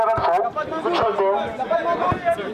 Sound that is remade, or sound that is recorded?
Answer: recorded